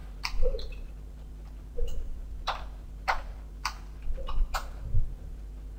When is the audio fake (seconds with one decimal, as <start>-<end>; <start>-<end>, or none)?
0.0-5.8